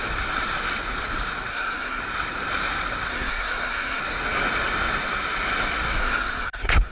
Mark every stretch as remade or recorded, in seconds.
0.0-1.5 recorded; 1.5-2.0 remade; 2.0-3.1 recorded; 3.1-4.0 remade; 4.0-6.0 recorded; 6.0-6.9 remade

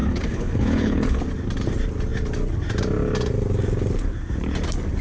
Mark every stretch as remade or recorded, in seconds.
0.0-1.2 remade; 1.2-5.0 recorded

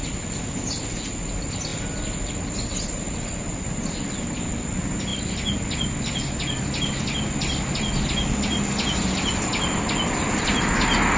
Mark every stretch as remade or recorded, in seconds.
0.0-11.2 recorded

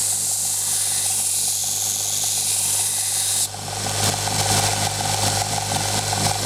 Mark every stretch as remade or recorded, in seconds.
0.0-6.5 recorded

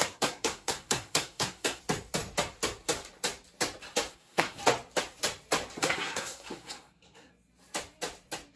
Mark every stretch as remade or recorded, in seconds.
0.0-1.8 remade; 1.8-4.1 recorded; 4.1-4.6 remade; 4.6-5.8 recorded; 5.8-7.3 remade; 7.3-8.6 recorded